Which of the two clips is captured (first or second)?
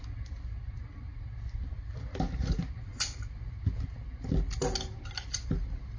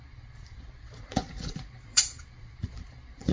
first